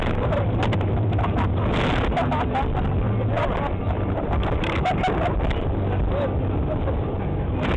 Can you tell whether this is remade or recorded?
recorded